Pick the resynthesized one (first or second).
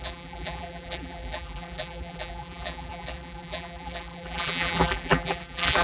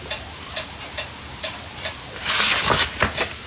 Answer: first